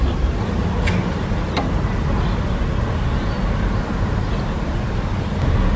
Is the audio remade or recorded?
recorded